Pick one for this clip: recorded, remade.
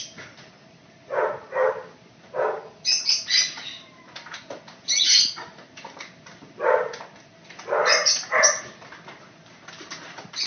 recorded